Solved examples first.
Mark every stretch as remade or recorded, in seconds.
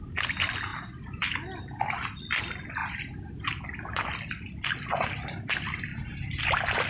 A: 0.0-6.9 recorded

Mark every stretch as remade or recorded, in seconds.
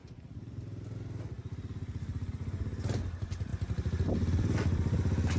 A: 0.0-5.4 recorded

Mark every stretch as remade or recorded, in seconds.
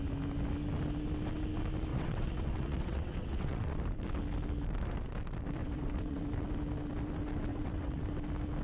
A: 0.0-1.9 recorded; 1.9-3.8 remade; 3.8-5.6 recorded; 5.6-6.2 remade; 6.2-7.5 recorded; 7.5-8.0 remade; 8.0-8.6 recorded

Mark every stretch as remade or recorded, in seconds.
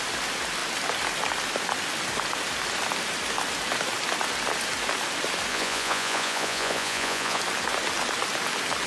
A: 0.0-5.5 recorded; 5.5-7.4 remade; 7.4-8.9 recorded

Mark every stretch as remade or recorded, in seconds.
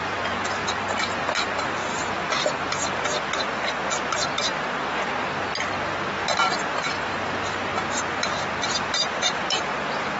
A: 0.0-1.8 recorded; 1.8-4.0 remade; 4.0-6.2 recorded; 6.2-6.9 remade; 6.9-7.7 recorded; 7.7-10.2 remade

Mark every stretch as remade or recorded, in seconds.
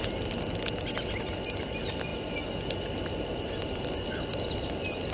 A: 0.0-5.1 recorded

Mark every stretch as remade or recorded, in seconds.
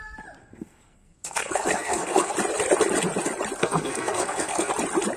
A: 0.0-0.4 recorded; 0.4-2.3 remade; 2.3-3.6 recorded; 3.6-4.7 remade; 4.7-5.2 recorded